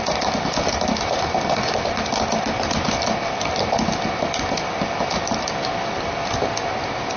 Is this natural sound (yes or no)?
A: yes